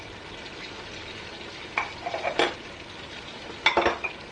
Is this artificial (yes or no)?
no